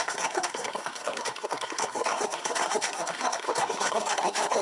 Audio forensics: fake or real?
fake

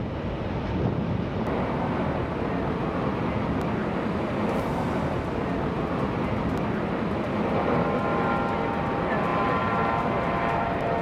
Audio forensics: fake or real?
real